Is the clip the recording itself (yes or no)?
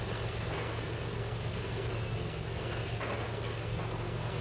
no